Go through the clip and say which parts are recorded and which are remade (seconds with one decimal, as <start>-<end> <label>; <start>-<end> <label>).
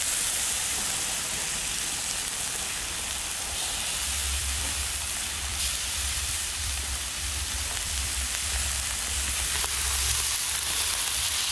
0.0-4.2 recorded; 4.2-8.4 remade; 8.4-11.5 recorded